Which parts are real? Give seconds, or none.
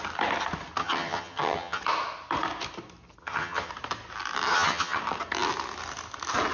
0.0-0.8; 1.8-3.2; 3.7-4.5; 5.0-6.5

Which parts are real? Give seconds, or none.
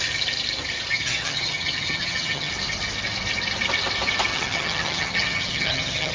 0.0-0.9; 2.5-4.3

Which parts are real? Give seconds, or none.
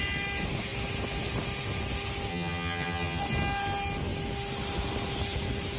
0.0-2.3; 3.2-5.8